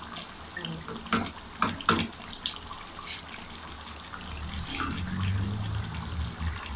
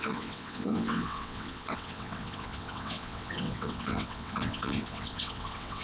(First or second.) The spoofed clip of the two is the second